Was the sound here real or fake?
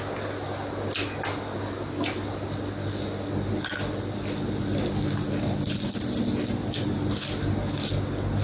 real